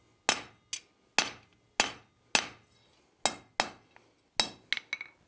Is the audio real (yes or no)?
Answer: yes